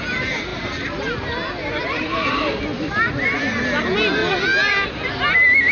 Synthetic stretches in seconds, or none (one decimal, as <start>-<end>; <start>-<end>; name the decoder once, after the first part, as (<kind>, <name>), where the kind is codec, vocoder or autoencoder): none